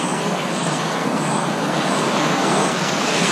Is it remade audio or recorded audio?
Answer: remade